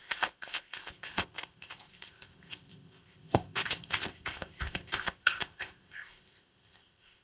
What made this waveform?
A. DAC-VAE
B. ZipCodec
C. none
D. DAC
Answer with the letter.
B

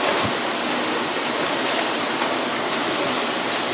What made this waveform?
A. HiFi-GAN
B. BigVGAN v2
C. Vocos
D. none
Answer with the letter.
D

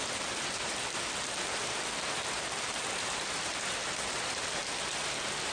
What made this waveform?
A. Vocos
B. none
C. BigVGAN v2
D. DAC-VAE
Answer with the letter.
B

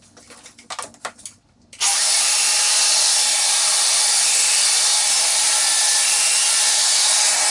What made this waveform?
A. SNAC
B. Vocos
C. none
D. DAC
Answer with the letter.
C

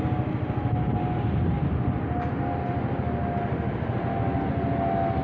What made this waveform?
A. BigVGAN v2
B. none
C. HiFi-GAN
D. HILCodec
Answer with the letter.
B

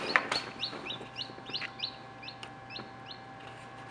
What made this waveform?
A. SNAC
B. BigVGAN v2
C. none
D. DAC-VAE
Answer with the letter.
C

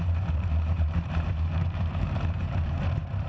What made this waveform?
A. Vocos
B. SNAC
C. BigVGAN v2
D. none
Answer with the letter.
C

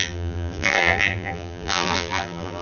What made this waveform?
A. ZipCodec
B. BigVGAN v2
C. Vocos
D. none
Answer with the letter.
B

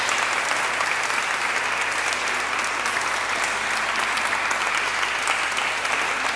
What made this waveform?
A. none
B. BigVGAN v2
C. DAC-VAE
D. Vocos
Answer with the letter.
A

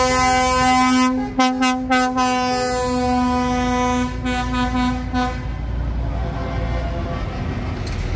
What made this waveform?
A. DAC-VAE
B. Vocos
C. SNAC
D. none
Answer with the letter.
D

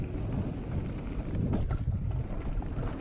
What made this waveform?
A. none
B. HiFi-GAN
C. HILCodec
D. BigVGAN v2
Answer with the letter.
A